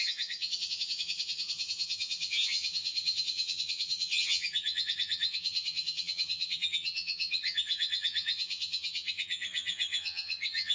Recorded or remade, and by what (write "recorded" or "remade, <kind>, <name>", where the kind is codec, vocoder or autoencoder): remade, vocoder, HiFi-GAN